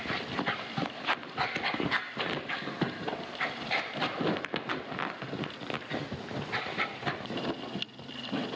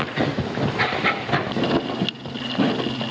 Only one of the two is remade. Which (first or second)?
first